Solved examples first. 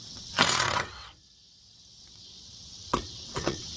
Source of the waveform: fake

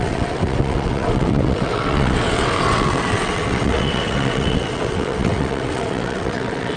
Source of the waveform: fake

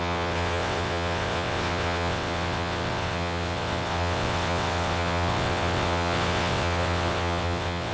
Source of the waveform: fake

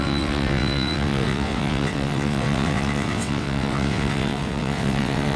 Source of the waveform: fake